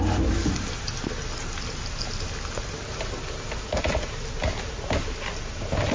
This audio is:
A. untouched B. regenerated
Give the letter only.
A